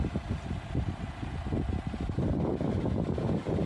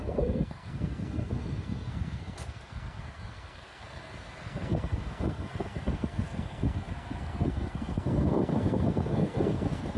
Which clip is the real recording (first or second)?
first